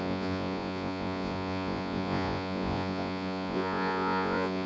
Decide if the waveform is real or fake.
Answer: fake